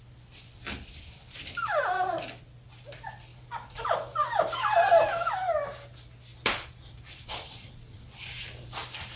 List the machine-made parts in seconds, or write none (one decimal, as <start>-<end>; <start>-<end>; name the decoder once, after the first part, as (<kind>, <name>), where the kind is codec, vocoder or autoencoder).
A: 3.3-4.9 (vocoder, BigVGAN v2); 6.3-7.7